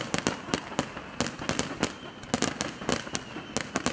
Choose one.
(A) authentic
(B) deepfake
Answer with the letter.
A